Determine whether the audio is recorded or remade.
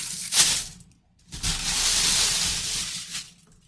recorded